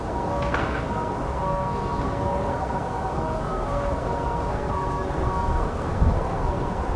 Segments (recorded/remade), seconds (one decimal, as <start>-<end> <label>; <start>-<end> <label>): 0.0-7.0 remade